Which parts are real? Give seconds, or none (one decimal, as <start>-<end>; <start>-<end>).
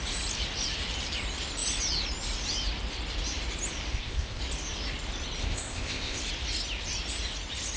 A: 0.0-3.9; 4.4-5.4; 6.2-7.8